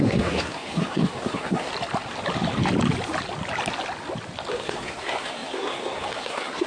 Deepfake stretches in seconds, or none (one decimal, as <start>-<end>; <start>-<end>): 0.0-1.7; 4.5-6.7